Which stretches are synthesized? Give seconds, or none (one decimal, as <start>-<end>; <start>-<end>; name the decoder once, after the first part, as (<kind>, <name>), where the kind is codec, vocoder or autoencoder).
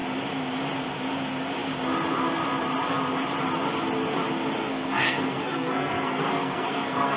4.6-7.2 (codec, SNAC)